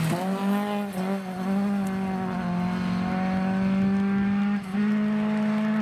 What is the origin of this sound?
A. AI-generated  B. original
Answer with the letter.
B